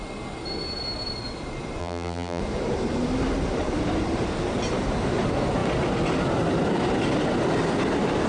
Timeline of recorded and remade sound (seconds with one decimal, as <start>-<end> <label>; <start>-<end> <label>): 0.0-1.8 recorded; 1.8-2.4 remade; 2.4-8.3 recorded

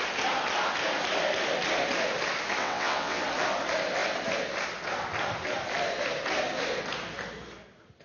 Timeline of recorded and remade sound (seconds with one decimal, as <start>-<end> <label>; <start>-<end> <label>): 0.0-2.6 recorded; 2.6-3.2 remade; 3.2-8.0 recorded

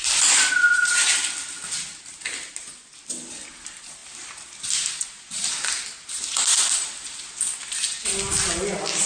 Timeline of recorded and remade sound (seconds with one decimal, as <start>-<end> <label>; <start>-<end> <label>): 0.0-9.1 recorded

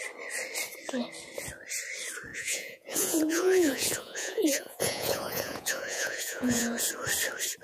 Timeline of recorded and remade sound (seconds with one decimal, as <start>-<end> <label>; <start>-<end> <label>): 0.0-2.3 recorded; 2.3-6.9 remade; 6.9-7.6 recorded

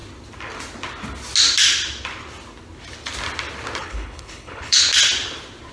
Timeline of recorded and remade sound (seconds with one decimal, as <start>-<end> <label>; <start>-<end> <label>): 0.0-3.8 recorded; 3.8-4.8 remade; 4.8-5.7 recorded

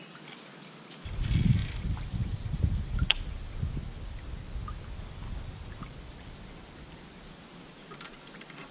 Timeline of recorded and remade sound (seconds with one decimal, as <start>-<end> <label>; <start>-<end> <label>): 0.0-8.7 recorded